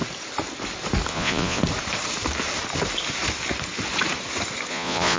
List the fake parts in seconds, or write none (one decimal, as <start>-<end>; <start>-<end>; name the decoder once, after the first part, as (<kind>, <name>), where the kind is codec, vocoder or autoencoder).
1.1-1.6 (vocoder, Vocos); 4.7-5.2